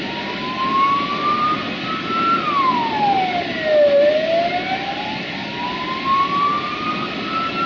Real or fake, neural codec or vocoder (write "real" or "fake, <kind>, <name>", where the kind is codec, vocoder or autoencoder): real